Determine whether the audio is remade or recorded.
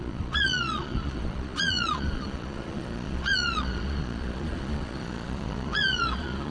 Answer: remade